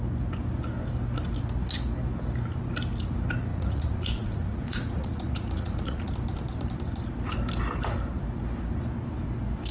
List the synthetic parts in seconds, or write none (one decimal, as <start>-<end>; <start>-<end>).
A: 3.5-6.1